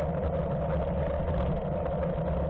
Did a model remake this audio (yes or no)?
no